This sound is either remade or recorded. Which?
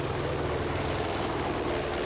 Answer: recorded